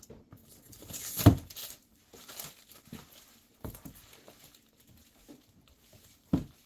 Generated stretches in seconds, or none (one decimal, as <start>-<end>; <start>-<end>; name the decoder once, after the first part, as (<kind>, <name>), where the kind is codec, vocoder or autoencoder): none